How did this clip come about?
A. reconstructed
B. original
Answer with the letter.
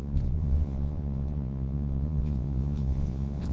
A